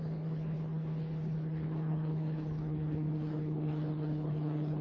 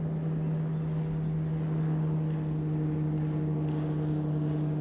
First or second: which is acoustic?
second